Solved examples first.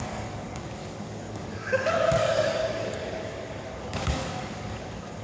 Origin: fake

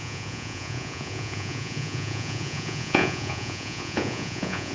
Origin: fake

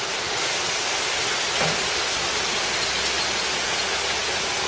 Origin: real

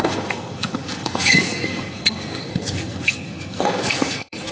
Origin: fake